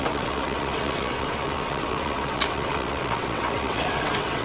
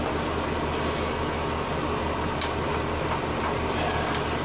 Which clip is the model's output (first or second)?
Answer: first